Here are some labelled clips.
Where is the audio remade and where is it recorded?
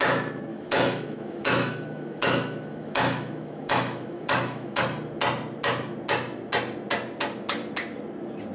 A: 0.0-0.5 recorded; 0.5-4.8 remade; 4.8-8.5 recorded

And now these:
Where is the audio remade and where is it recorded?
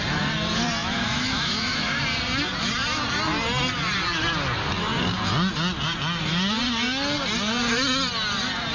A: 0.0-0.8 recorded; 0.8-2.0 remade; 2.0-8.7 recorded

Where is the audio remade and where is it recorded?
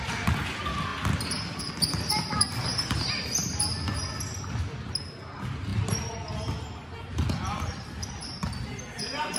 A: 0.0-9.4 recorded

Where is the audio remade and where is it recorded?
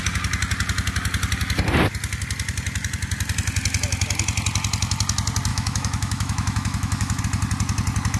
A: 0.0-5.5 recorded; 5.5-7.2 remade; 7.2-8.2 recorded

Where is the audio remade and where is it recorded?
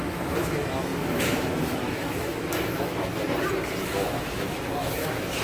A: 0.0-3.1 remade; 3.1-3.8 recorded; 3.8-5.4 remade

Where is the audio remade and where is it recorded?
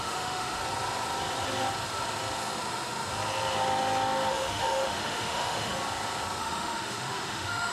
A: 0.0-0.6 remade; 0.6-4.3 recorded; 4.3-5.7 remade; 5.7-6.4 recorded; 6.4-7.7 remade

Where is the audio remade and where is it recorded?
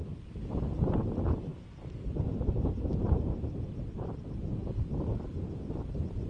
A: 0.0-6.3 recorded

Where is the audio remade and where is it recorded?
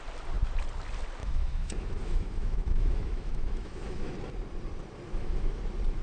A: 0.0-1.2 recorded; 1.2-4.1 remade; 4.1-5.1 recorded; 5.1-5.6 remade; 5.6-6.0 recorded